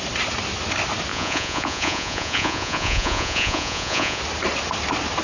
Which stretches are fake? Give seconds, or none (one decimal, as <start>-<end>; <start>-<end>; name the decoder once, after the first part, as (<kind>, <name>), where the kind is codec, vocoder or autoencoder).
1.1-4.2 (vocoder, Vocos)